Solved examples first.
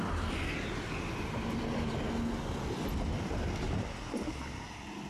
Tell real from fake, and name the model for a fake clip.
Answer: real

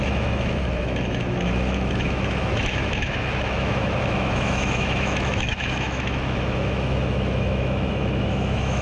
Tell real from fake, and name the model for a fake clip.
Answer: fake, autoencoder, DAC-VAE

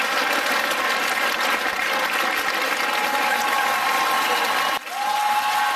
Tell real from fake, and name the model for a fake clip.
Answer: real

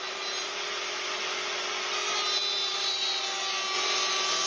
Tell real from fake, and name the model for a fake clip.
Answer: real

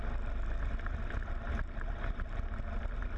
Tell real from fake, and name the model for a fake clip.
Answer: real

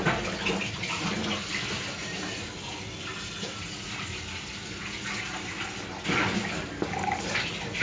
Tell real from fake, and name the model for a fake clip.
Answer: real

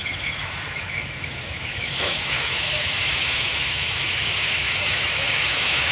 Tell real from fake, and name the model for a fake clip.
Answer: fake, autoencoder, DAC-VAE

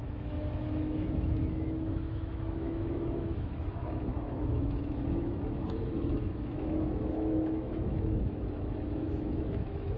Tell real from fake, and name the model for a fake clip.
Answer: fake, autoencoder, DAC-VAE